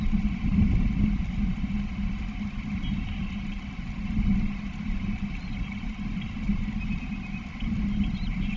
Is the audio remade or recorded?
recorded